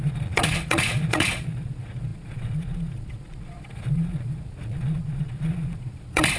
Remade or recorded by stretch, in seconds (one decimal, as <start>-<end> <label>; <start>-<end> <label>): 0.0-6.4 remade